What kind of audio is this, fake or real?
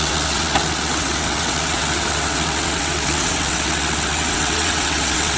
fake